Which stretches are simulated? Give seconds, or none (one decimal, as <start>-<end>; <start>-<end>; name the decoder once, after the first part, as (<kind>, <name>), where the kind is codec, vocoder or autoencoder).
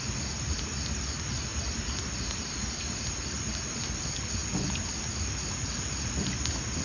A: none